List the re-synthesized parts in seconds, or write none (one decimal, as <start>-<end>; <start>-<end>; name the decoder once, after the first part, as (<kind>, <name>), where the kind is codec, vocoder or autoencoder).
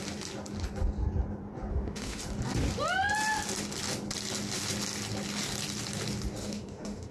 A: 1.7-2.2 (autoencoder, DAC-VAE); 6.4-7.1